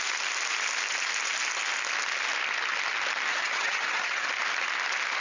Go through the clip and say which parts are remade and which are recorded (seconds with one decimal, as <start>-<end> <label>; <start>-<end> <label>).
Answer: 0.0-3.3 recorded; 3.3-4.3 remade; 4.3-5.2 recorded